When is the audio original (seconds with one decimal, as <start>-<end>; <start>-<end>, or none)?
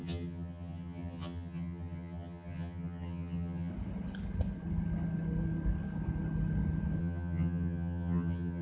3.7-7.0